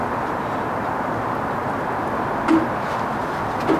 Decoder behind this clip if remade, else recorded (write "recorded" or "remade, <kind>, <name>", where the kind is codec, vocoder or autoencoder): recorded